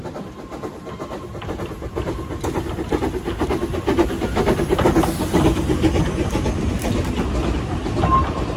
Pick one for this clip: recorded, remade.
recorded